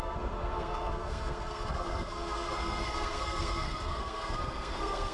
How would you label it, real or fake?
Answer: fake